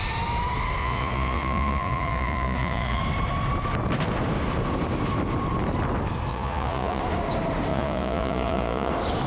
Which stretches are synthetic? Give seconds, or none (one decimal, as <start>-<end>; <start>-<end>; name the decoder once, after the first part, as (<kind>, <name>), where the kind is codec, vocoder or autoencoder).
0.8-3.0 (vocoder, Vocos); 6.3-7.0; 7.7-8.9